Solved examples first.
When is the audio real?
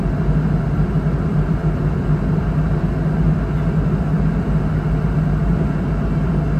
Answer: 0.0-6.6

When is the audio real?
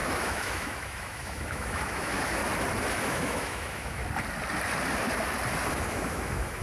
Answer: 2.4-2.9; 4.0-5.7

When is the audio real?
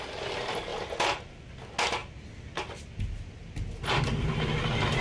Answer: 0.0-0.7; 1.4-5.0